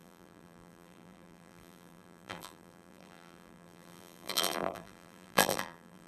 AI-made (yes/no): yes